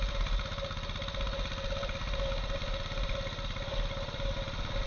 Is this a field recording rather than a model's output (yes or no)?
yes